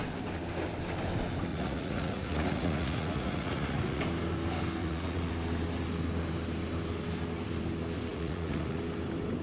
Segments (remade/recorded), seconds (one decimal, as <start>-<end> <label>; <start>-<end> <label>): 0.0-1.5 recorded; 1.5-4.0 remade; 4.0-4.8 recorded; 4.8-5.3 remade; 5.3-8.1 recorded; 8.1-8.8 remade; 8.8-9.4 recorded